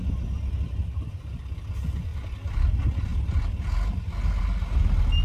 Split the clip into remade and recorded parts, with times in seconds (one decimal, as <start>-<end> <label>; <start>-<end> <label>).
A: 0.0-5.2 recorded